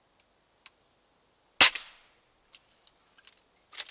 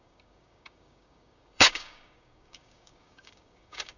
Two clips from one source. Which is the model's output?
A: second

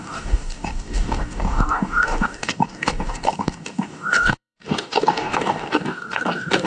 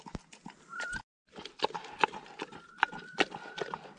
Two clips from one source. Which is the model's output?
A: first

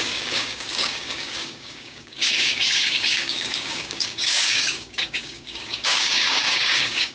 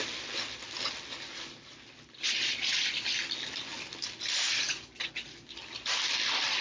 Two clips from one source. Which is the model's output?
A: first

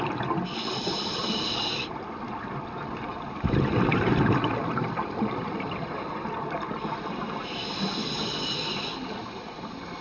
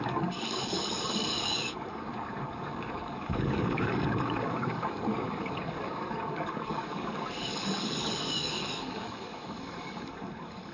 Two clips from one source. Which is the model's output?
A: second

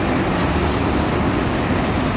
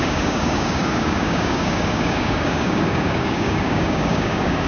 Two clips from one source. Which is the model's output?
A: second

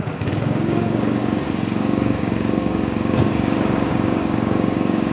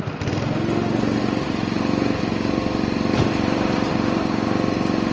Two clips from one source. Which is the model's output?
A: first